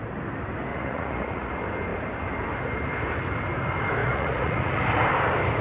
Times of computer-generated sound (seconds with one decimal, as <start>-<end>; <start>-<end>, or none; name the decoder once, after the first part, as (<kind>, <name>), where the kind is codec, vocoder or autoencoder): 0.7-1.5 (vocoder, Vocos); 4.0-4.8